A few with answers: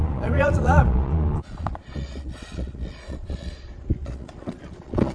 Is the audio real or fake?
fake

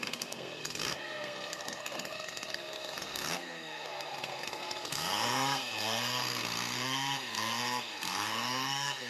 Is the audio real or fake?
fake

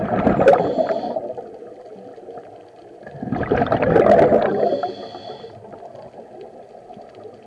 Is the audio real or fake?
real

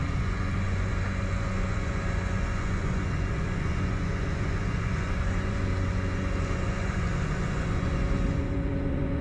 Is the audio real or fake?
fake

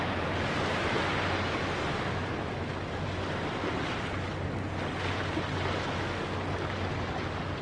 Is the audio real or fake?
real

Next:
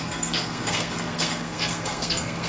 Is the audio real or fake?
fake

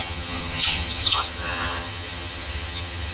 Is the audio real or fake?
fake